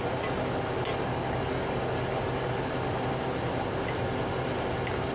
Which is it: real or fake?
real